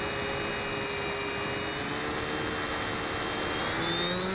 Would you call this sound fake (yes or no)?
no